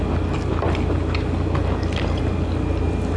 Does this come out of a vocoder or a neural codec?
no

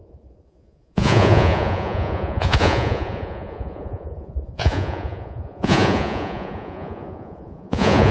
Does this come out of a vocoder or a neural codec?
yes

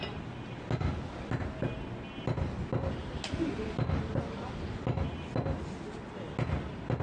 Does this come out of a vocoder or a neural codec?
no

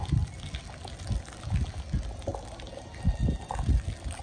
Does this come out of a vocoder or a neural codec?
no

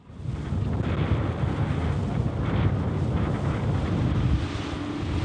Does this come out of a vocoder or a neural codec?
no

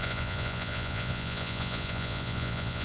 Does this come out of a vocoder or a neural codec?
yes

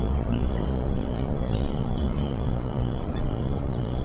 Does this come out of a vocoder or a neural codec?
yes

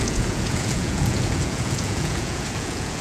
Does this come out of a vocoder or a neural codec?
yes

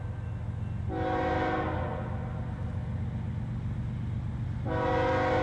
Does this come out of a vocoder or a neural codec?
no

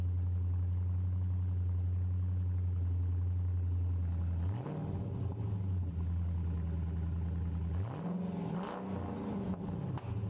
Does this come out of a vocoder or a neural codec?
no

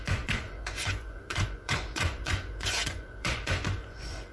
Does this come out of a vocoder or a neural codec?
yes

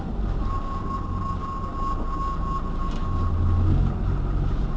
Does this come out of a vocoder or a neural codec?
no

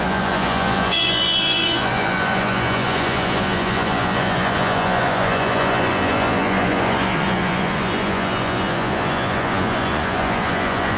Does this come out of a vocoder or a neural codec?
yes